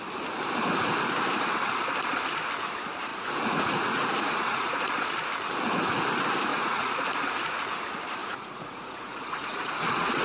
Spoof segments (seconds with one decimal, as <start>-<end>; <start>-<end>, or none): 3.1-5.1; 6.5-7.4; 8.2-10.2